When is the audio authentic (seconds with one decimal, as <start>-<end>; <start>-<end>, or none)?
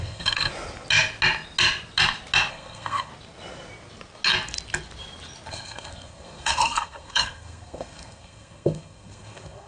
0.5-2.5; 3.1-5.5